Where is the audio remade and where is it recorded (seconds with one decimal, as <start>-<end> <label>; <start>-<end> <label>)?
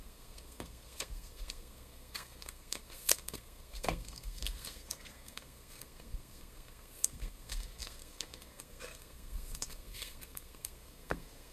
0.0-11.5 remade